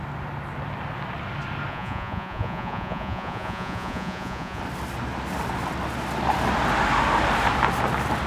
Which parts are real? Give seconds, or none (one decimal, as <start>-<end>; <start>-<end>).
0.0-1.7; 4.6-8.3